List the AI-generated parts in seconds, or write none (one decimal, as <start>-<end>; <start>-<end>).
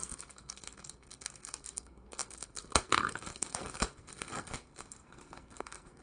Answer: 0.0-6.0